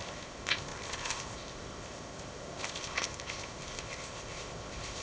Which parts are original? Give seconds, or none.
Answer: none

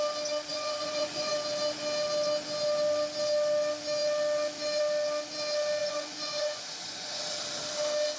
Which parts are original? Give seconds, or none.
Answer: 0.0-0.5; 1.3-5.8; 7.2-8.2